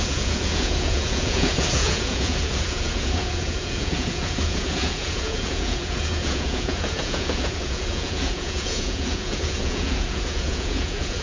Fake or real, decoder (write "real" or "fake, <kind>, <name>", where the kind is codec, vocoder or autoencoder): fake, vocoder, Vocos